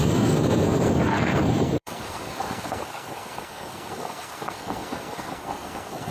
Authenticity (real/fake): fake